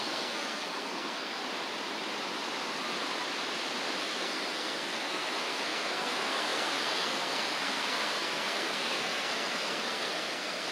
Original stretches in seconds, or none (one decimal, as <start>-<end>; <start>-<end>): 1.4-4.0